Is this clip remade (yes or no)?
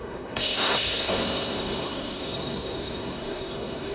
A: yes